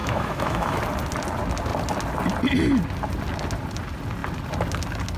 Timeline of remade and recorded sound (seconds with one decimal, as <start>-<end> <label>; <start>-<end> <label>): 0.0-0.8 remade; 0.8-5.2 recorded